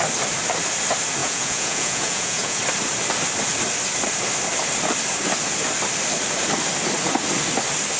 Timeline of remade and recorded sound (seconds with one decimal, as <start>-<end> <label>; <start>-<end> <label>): 0.0-1.2 recorded; 1.2-2.6 remade; 2.6-8.0 recorded